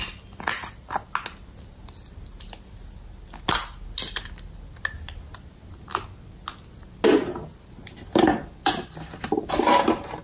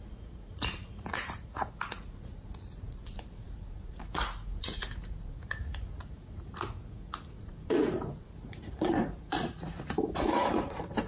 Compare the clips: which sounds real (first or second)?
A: first